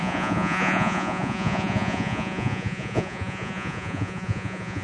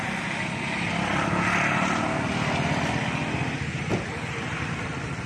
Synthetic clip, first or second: first